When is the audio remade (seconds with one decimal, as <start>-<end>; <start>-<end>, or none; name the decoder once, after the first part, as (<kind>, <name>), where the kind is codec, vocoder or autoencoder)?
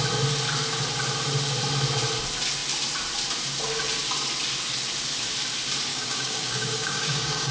5.9-7.5 (codec, DAC)